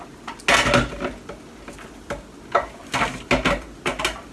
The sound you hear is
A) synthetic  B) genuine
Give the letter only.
B